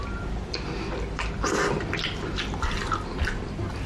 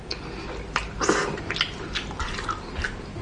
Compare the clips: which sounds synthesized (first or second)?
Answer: first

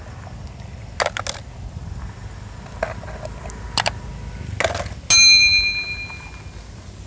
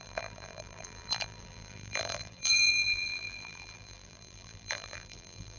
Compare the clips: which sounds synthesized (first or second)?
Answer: second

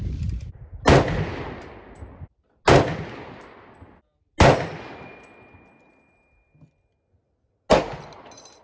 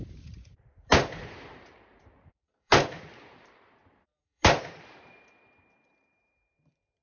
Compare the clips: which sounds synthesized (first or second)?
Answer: second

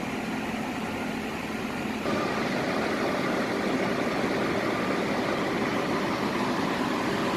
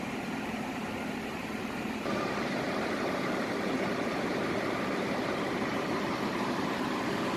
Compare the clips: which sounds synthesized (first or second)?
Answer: second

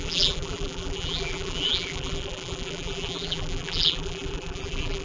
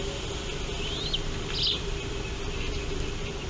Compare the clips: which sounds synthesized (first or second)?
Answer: first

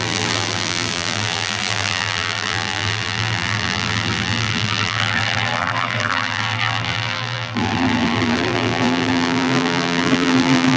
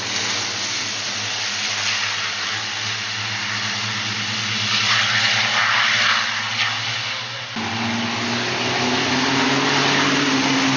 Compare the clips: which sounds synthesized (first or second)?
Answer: first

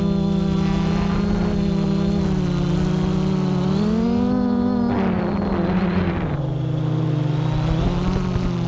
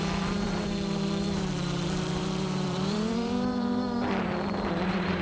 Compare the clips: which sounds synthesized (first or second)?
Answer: second